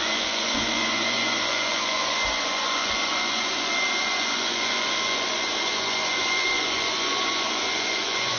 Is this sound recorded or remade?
remade